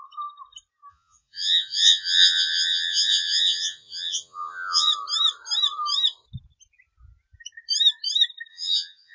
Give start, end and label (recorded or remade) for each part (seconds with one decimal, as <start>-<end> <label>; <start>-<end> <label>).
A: 0.0-0.9 recorded; 0.9-4.9 remade; 4.9-8.5 recorded; 8.5-9.1 remade